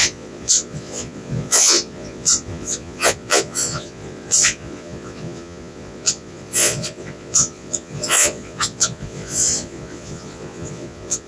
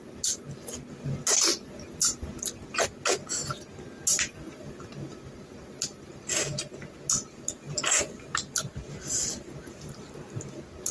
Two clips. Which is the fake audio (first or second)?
first